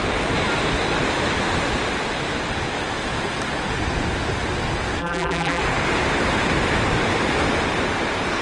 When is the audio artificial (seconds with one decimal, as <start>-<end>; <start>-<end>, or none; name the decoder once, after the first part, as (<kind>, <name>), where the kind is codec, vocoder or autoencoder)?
5.0-5.6 (vocoder, BigVGAN v2)